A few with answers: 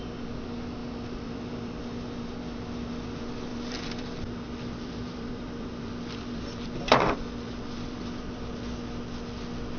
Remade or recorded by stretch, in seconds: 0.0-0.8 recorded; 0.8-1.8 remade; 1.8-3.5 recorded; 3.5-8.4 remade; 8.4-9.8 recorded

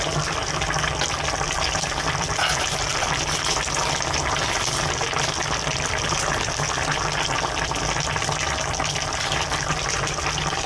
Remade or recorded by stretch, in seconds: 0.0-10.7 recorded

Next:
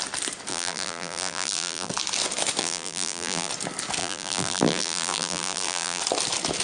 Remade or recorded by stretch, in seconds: 0.0-0.5 recorded; 0.5-1.9 remade; 1.9-2.6 recorded; 2.6-3.5 remade; 3.5-4.0 recorded; 4.0-6.0 remade; 6.0-6.6 recorded

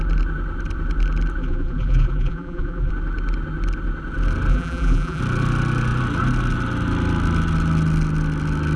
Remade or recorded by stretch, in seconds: 0.0-1.4 recorded; 1.4-2.9 remade; 2.9-4.5 recorded; 4.5-5.2 remade; 5.2-8.8 recorded

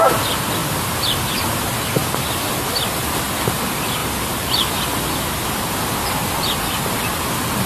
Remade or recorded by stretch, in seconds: 0.0-0.6 recorded; 0.6-2.3 remade; 2.3-4.0 recorded; 4.0-4.7 remade; 4.7-7.7 recorded